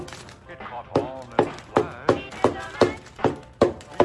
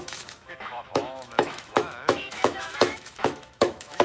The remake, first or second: second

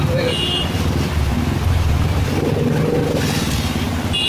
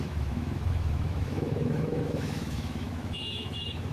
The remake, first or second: second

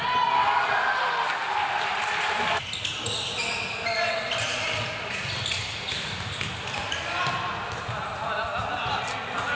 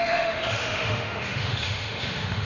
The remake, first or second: second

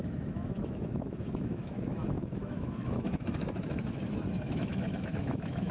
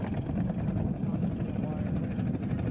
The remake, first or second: first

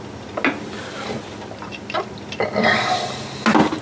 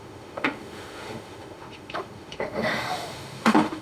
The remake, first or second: second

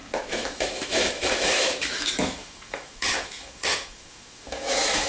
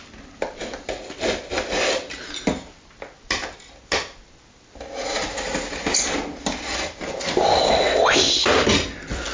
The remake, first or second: first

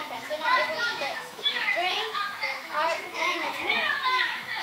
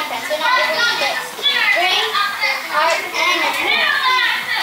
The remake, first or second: first